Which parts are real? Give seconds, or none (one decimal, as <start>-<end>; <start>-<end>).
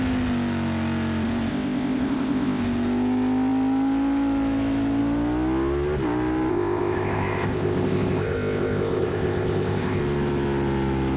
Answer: 0.0-1.5; 2.6-6.5; 10.0-11.2